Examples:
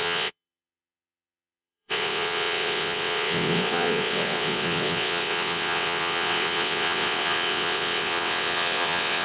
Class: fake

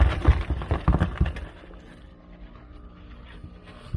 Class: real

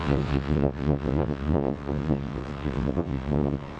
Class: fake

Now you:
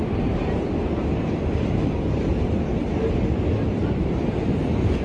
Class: real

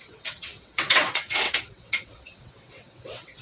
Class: fake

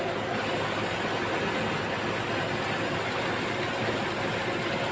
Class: real